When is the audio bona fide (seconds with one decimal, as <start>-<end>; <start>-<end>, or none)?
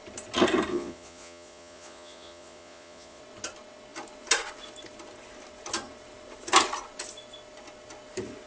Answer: 0.0-0.7; 3.2-8.5